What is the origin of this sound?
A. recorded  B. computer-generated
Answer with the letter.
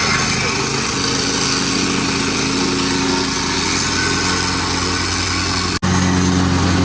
A